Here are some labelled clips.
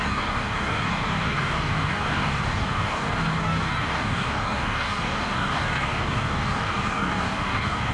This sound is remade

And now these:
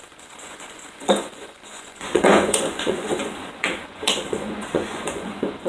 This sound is remade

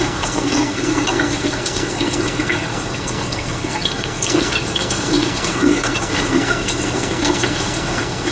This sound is remade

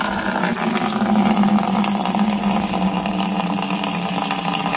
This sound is recorded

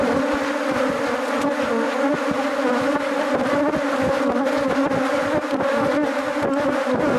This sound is recorded